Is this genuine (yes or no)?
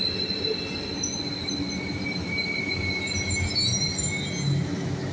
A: yes